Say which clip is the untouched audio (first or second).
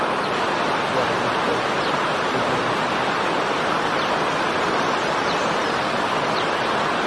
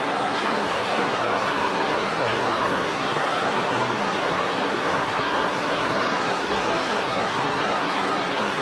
first